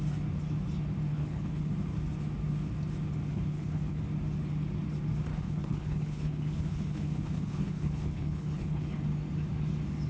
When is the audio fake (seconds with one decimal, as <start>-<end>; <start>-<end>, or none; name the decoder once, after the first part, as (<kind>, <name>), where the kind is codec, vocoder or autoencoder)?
1.1-1.7 (codec, HILCodec); 3.3-4.0; 5.3-9.0